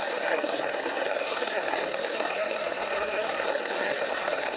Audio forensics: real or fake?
fake